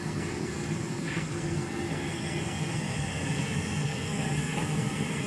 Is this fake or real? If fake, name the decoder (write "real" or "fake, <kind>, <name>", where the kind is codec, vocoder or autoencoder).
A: fake, codec, SNAC